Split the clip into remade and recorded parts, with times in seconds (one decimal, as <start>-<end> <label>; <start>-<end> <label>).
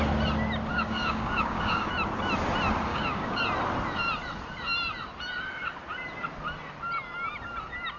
0.0-0.7 recorded; 0.7-1.9 remade; 1.9-2.9 recorded; 2.9-3.4 remade; 3.4-8.0 recorded